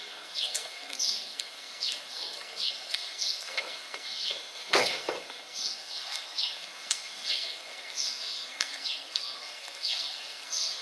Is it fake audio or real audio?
fake